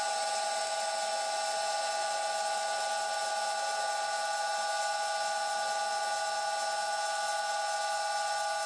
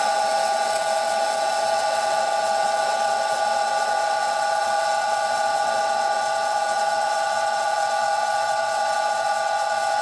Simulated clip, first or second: second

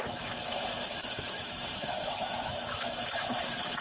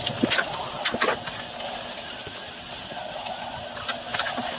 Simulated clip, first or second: first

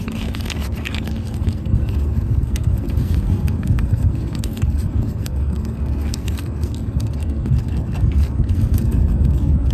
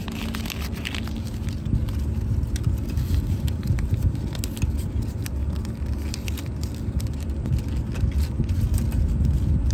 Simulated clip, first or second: first